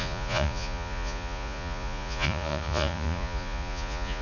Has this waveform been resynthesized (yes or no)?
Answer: yes